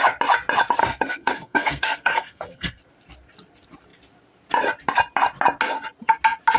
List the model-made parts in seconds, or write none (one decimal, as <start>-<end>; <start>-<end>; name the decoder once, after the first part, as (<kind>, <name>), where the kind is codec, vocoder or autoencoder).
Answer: 0.8-2.8 (codec, SNAC)